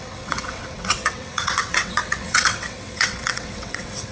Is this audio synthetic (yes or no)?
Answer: yes